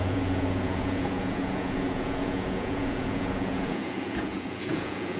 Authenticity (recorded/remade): remade